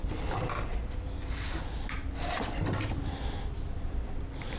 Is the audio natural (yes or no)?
yes